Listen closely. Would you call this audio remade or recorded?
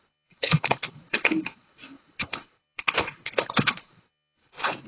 remade